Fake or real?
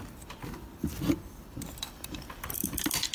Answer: fake